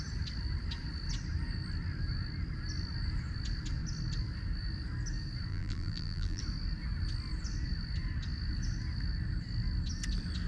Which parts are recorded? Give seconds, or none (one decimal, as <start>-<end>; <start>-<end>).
0.0-5.5; 6.4-10.5